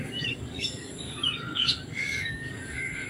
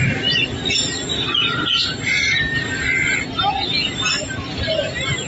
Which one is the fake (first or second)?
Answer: first